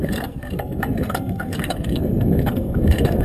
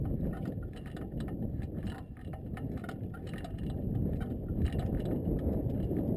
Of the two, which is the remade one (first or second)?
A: first